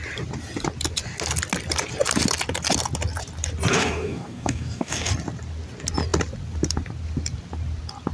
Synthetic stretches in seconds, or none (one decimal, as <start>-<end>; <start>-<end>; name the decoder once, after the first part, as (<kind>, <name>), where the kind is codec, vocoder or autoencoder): 3.7-5.1 (codec, DAC)